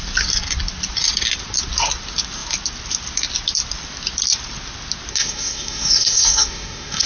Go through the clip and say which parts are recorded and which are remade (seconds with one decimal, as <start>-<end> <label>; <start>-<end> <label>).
0.0-5.1 recorded; 5.1-7.1 remade